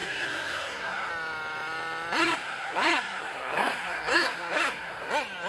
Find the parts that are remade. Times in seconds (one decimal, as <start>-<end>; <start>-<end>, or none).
0.0-1.1; 2.2-5.1